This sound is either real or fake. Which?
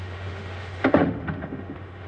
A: fake